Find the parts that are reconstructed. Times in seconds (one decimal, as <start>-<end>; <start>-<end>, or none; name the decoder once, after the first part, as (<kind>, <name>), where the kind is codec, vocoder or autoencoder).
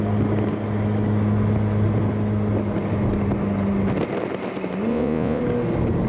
4.9-5.4 (vocoder, Vocos)